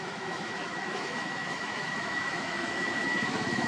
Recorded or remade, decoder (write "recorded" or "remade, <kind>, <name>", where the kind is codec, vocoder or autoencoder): remade, autoencoder, DAC-VAE